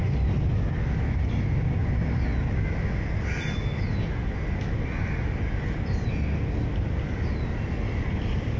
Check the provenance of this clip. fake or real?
real